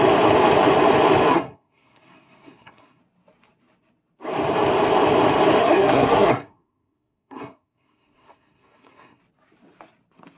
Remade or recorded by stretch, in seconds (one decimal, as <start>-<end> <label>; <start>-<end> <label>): 0.0-1.3 recorded; 1.3-3.0 remade; 3.0-5.6 recorded; 5.6-9.2 remade; 9.2-10.4 recorded